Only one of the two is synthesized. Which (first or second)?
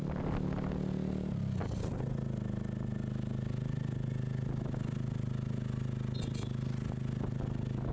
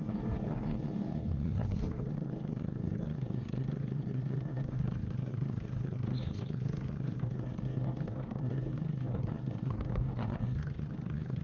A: second